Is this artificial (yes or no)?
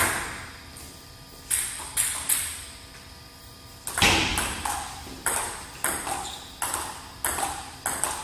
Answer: no